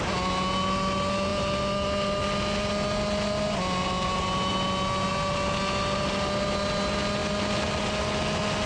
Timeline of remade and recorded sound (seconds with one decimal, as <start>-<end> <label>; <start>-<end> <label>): 0.0-8.7 recorded